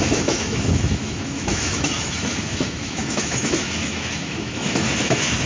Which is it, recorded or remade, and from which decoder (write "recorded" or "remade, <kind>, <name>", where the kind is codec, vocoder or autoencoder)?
remade, autoencoder, DAC-VAE